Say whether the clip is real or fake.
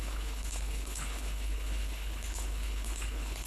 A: fake